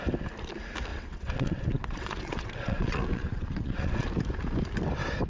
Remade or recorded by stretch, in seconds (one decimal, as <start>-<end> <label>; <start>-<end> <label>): 0.0-0.9 recorded; 0.9-4.1 remade; 4.1-5.3 recorded